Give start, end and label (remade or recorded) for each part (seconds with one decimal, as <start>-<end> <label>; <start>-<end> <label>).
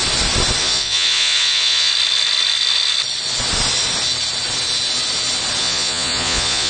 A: 0.0-0.6 recorded; 0.6-1.9 remade; 1.9-5.6 recorded; 5.6-6.7 remade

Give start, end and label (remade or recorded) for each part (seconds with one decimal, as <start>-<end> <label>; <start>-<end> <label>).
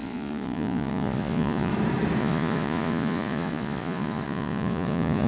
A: 0.0-1.7 remade; 1.7-2.2 recorded; 2.2-5.3 remade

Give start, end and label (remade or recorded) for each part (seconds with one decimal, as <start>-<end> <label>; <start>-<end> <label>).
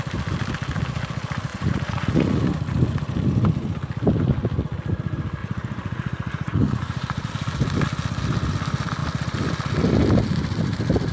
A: 0.0-1.5 recorded; 1.5-2.4 remade; 2.4-5.4 recorded; 5.4-7.3 remade; 7.3-11.1 recorded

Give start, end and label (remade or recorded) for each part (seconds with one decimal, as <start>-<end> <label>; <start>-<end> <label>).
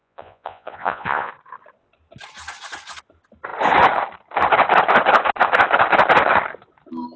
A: 0.0-1.3 remade; 1.3-7.2 recorded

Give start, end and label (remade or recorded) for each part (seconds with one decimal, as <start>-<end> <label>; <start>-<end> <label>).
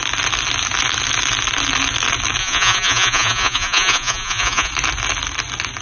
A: 0.0-2.4 recorded; 2.4-4.7 remade; 4.7-5.8 recorded